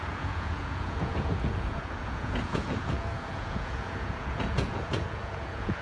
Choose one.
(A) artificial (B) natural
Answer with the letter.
A